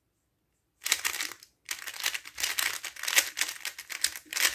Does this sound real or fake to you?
real